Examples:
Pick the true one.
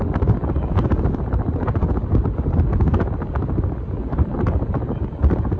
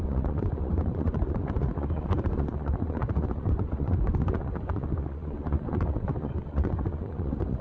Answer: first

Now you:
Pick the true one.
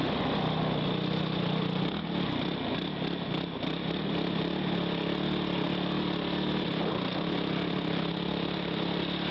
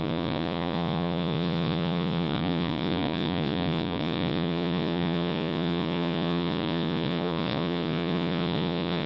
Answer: first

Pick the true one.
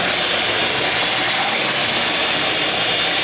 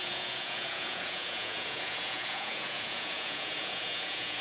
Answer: first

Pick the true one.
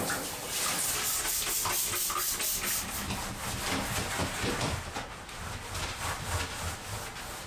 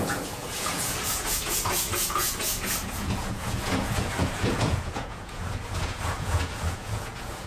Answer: first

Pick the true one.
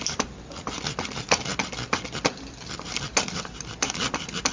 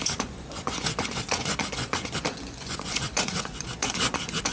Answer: first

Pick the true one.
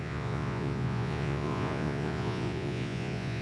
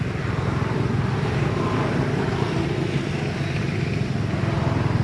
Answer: second